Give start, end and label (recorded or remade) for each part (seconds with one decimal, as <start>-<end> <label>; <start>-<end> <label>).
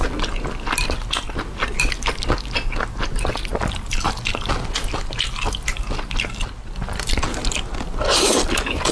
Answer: 0.0-8.9 recorded